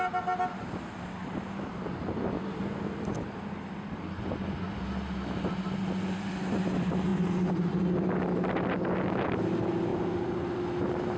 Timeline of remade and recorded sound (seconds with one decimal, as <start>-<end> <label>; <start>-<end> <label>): 0.0-11.2 recorded